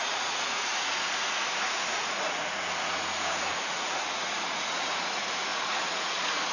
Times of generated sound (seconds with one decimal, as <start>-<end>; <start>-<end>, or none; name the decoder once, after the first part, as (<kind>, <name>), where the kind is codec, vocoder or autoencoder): 0.0-6.5 (vocoder, Vocos)